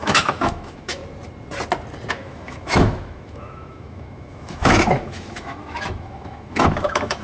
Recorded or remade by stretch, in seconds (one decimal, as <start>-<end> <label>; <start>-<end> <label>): 0.0-1.0 remade; 1.0-2.1 recorded; 2.1-7.2 remade